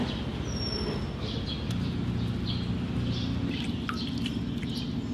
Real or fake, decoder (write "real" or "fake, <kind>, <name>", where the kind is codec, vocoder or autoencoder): real